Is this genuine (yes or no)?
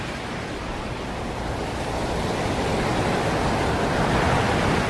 yes